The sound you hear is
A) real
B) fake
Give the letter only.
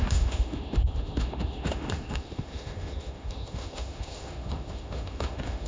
B